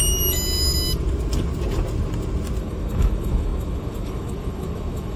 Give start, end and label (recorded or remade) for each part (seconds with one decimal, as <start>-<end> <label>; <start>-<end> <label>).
0.0-2.6 recorded; 2.6-5.2 remade